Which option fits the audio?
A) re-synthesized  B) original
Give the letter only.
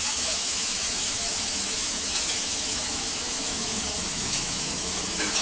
A